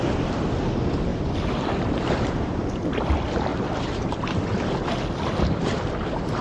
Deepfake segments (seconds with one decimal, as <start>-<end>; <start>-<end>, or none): 1.1-2.6; 3.5-4.4